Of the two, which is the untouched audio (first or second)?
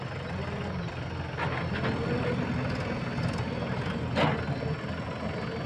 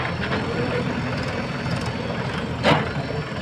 first